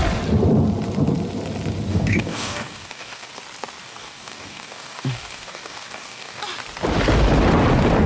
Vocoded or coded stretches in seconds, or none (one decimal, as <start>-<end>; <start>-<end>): 1.9-3.3; 3.8-6.4

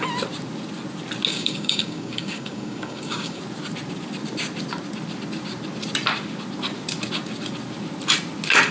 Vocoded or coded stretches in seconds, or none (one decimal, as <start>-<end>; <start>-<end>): 1.3-3.4

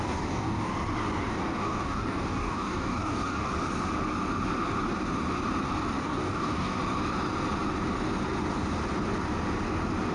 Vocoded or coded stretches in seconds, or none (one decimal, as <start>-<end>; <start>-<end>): 0.0-0.7; 1.2-3.5; 6.0-6.8

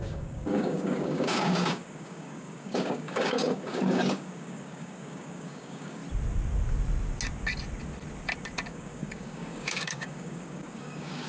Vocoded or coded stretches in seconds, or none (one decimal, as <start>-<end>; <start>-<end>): 0.0-6.0; 8.7-11.3

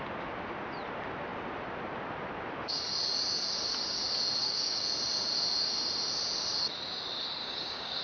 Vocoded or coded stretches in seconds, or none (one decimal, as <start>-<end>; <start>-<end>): 4.4-4.9; 7.4-8.0

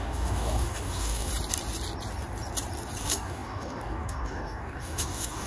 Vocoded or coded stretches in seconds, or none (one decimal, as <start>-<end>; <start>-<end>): 0.0-1.3; 3.0-5.5

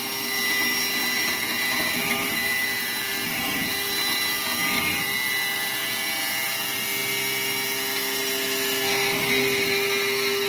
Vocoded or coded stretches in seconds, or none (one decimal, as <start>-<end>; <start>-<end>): none

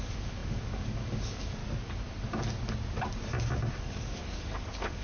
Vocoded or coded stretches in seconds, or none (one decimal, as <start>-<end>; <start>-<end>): 0.0-1.6; 3.7-5.0